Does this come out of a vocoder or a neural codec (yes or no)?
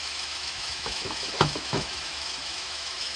yes